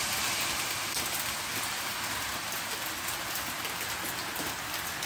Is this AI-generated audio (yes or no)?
no